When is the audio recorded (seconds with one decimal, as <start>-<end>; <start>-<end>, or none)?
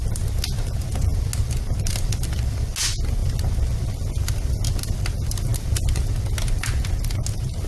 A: 0.0-7.7